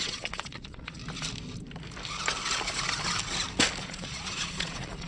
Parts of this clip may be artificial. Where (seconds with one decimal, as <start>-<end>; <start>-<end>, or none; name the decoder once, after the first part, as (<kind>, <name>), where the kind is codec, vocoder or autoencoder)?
0.0-1.0 (vocoder, Vocos); 3.8-5.1